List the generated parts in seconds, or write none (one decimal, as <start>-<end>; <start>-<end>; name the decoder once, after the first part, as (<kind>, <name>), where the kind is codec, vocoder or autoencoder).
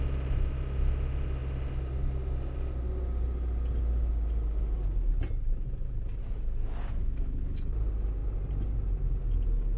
8.2-9.2 (vocoder, BigVGAN v2)